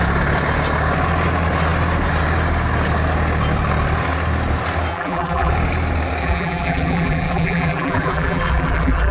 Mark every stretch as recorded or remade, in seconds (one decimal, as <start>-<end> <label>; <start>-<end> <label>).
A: 0.0-4.9 recorded; 4.9-5.5 remade; 5.5-6.2 recorded; 6.2-9.1 remade